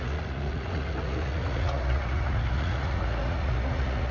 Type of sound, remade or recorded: remade